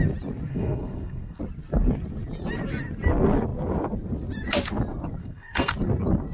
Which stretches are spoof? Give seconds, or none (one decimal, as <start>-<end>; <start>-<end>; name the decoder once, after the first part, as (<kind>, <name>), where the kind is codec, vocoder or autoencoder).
0.5-1.4 (codec, SNAC); 5.2-5.7